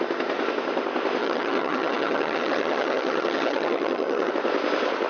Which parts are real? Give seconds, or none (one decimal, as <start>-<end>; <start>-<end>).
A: 0.0-1.2; 4.3-5.1